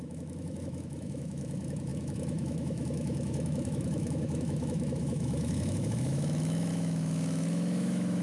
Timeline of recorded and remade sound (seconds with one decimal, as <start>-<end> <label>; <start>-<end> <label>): 0.0-8.2 remade